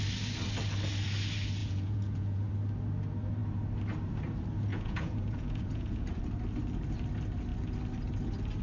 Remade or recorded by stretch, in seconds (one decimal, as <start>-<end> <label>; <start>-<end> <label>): 0.0-1.6 recorded; 1.6-2.5 remade; 2.5-4.7 recorded; 4.7-6.2 remade; 6.2-8.6 recorded